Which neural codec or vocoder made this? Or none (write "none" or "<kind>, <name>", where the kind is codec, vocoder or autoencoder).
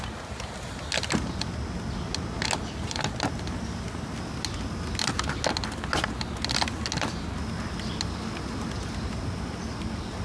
none